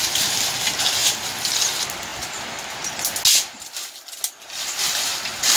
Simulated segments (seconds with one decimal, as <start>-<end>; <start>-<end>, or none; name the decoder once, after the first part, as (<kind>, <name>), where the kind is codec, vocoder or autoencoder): none